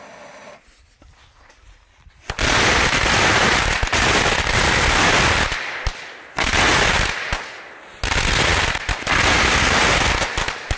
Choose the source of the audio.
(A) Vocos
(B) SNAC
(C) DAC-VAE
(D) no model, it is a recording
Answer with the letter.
D